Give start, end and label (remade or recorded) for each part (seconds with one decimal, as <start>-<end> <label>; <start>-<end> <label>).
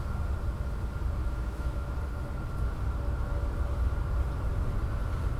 0.0-1.2 recorded; 1.2-1.9 remade; 1.9-5.4 recorded